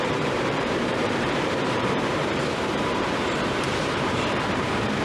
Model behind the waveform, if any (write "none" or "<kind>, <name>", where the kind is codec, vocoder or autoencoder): vocoder, BigVGAN v2